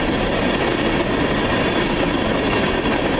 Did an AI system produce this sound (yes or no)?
no